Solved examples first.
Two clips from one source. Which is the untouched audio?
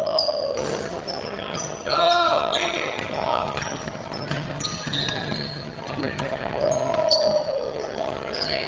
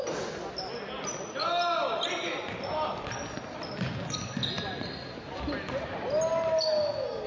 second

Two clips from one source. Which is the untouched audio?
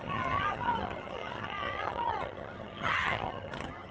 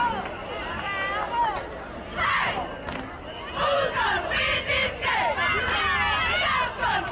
second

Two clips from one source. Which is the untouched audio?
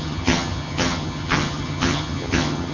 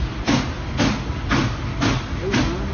second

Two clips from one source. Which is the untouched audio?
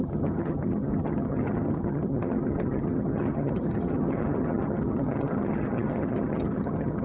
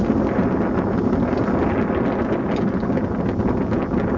second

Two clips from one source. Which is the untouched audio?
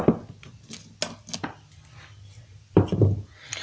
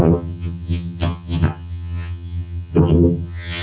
first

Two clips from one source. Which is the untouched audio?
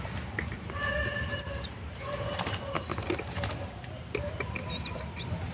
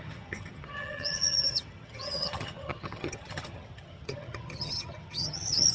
first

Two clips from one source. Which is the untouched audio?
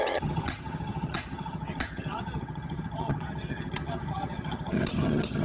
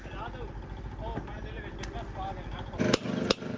second